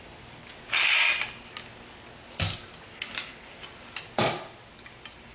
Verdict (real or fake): real